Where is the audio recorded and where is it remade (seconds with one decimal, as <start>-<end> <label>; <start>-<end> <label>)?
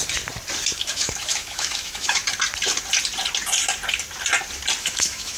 0.0-0.8 recorded; 0.8-2.2 remade; 2.2-4.8 recorded; 4.8-5.4 remade